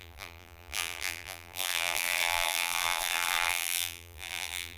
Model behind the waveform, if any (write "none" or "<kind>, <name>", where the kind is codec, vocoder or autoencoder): vocoder, BigVGAN v2